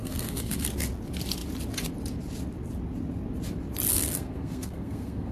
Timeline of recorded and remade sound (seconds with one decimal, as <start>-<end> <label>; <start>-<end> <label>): 0.0-0.7 remade; 0.7-3.9 recorded; 3.9-5.3 remade